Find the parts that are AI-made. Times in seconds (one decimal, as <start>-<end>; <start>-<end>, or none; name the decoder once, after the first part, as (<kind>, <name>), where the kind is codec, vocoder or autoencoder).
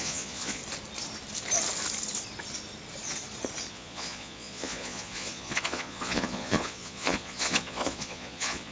0.0-0.6 (vocoder, Vocos); 3.7-8.7